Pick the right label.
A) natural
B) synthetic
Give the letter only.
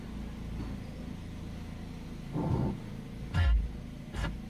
A